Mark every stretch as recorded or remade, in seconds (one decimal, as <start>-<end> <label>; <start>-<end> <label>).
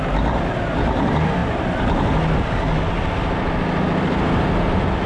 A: 0.0-5.1 recorded